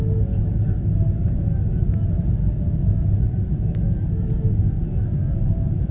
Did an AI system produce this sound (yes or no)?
no